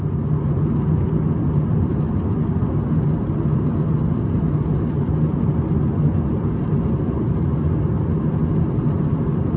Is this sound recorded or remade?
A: recorded